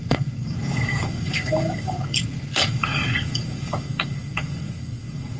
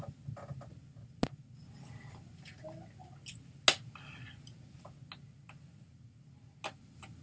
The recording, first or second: second